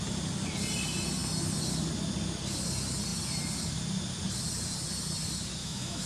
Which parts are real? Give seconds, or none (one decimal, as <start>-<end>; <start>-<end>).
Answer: 0.0-5.6